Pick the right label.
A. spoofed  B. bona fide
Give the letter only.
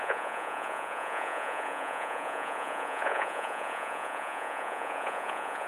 A